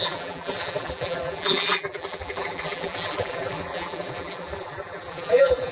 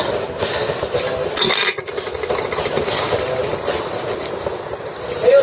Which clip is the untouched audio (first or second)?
second